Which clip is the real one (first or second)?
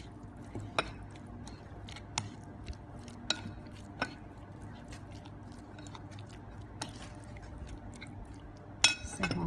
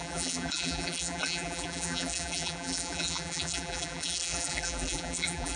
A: first